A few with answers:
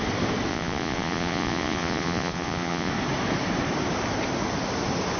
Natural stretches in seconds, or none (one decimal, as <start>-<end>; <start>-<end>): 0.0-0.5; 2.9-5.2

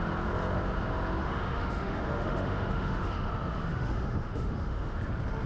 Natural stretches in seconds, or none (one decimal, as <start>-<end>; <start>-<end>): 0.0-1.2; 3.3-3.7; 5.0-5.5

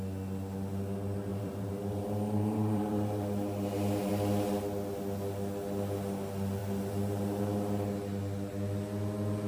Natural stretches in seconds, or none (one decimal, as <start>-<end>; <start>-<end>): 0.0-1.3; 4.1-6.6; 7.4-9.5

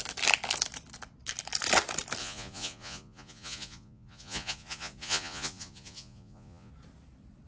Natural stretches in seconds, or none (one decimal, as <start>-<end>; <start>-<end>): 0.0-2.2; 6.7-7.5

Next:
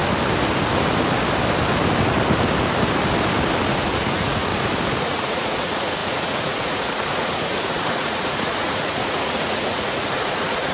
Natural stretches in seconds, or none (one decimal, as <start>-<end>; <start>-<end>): 0.0-3.7; 4.5-5.0

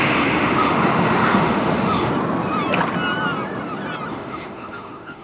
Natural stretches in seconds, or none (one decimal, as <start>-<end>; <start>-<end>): 2.1-4.1

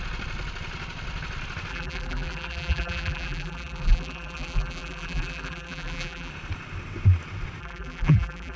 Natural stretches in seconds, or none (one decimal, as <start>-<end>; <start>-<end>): 0.0-1.7; 6.3-7.6

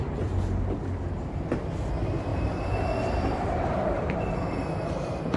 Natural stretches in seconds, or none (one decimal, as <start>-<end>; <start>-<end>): 0.0-2.3